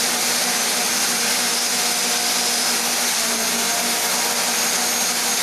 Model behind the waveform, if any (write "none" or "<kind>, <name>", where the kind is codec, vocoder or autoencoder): none